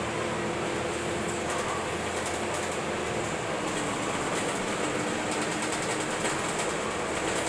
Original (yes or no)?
yes